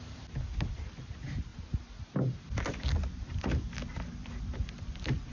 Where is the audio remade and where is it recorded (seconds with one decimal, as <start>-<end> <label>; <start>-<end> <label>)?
0.0-5.3 recorded